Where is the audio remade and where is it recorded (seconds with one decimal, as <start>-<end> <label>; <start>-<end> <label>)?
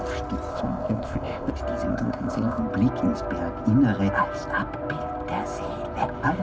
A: 0.0-0.5 recorded; 0.5-1.5 remade; 1.5-1.9 recorded; 1.9-2.6 remade; 2.6-6.4 recorded